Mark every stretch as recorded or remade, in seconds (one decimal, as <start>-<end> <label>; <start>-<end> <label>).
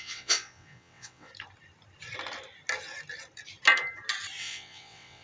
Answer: 0.0-1.3 remade; 1.3-4.4 recorded; 4.4-5.2 remade